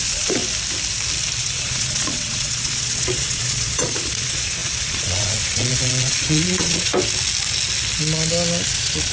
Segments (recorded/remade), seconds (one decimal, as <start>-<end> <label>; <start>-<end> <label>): 0.0-0.4 remade; 0.4-1.4 recorded; 1.4-6.9 remade; 6.9-8.7 recorded; 8.7-9.1 remade